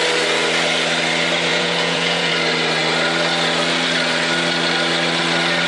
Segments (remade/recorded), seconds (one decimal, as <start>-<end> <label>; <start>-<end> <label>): 0.0-1.5 recorded; 1.5-2.3 remade; 2.3-5.7 recorded